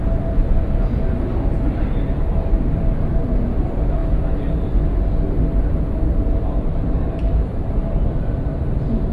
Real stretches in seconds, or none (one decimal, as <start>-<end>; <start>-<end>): 4.0-5.9